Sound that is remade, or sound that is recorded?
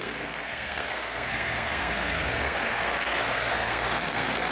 remade